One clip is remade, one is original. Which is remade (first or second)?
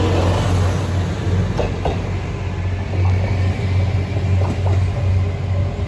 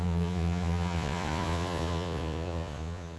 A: second